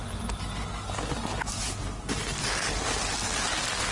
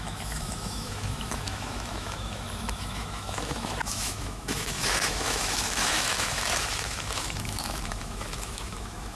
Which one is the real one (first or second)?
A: first